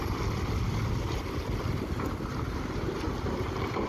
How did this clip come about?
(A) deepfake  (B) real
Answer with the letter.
B